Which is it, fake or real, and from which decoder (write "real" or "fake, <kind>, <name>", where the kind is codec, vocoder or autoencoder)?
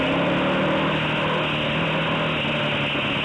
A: real